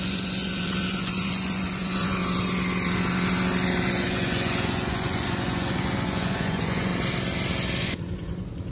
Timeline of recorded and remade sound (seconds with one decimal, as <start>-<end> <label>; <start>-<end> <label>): 0.0-2.2 remade; 2.2-3.9 recorded; 3.9-6.9 remade; 6.9-7.8 recorded; 7.8-8.7 remade